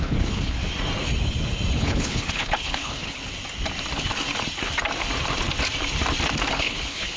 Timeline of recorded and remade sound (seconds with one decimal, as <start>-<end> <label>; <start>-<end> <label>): 0.0-0.6 remade; 0.6-1.7 recorded; 1.7-3.2 remade; 3.2-6.5 recorded; 6.5-7.2 remade